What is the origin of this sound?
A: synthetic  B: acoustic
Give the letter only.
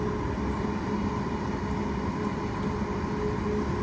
B